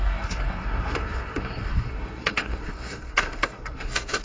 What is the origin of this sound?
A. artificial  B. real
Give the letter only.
A